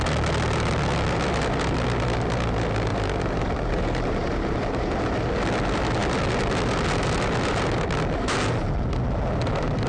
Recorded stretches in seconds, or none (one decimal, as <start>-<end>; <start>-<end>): 0.0-2.9; 4.9-9.9

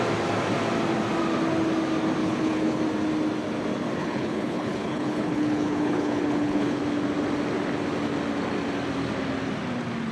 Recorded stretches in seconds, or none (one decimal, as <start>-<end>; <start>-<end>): 0.0-2.2; 2.8-4.0; 6.8-10.1